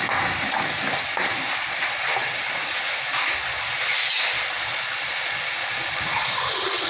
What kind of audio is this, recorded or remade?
recorded